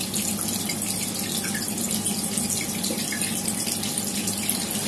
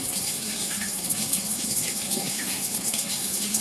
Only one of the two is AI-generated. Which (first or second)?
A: second